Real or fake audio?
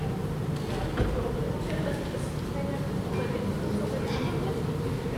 real